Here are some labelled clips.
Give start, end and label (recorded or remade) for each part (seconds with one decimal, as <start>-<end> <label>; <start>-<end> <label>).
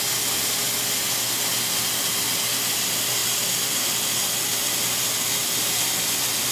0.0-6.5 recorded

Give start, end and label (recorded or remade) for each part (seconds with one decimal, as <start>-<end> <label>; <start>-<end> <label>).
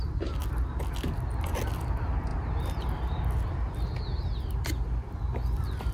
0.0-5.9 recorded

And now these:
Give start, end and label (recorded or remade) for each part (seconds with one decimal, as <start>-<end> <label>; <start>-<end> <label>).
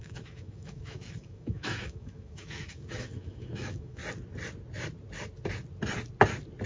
0.0-4.0 remade; 4.0-6.7 recorded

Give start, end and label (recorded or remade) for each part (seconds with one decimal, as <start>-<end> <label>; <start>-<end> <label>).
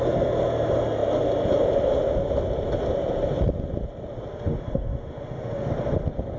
0.0-4.3 recorded; 4.3-5.7 remade; 5.7-6.4 recorded